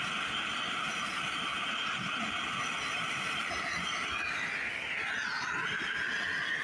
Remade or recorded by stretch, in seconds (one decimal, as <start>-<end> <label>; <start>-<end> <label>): 0.0-6.6 recorded

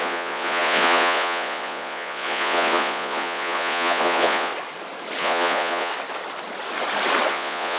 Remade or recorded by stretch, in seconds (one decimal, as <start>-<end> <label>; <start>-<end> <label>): 0.0-4.5 remade; 4.5-5.2 recorded; 5.2-5.9 remade; 5.9-7.3 recorded; 7.3-7.8 remade

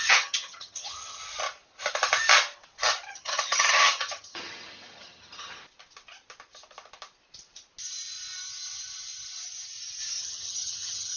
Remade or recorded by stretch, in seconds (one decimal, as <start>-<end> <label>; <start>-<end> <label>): 0.0-1.2 remade; 1.2-3.1 recorded; 3.1-5.6 remade; 5.6-10.2 recorded; 10.2-11.2 remade

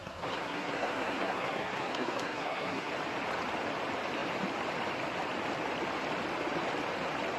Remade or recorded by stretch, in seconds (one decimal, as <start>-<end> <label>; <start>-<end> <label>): 0.0-2.9 remade; 2.9-7.4 recorded